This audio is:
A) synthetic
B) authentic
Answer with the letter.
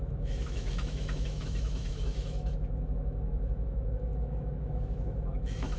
A